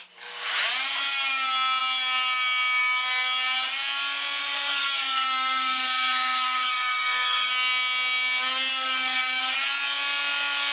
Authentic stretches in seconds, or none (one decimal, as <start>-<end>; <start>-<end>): 0.0-4.4; 7.5-8.7; 9.4-10.7